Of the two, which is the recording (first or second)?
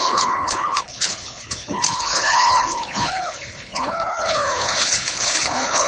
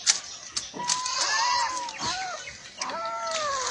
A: second